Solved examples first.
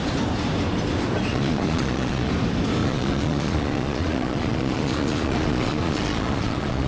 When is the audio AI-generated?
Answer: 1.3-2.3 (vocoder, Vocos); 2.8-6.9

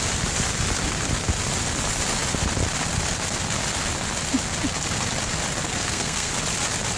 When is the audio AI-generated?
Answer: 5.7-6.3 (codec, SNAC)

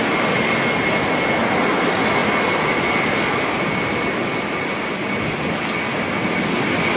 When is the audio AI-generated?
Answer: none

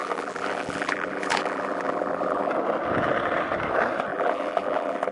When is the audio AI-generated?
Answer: 0.0-2.5 (vocoder, BigVGAN v2); 4.1-5.1